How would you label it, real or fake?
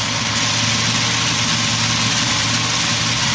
real